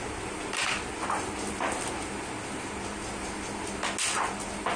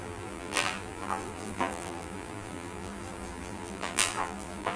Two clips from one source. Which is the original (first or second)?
first